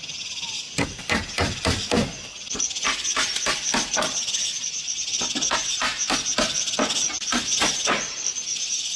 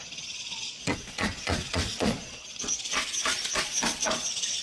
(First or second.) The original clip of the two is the first